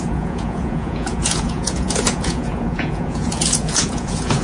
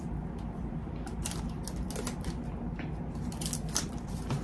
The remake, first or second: first